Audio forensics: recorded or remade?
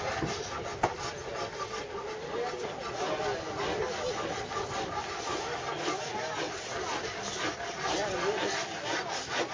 recorded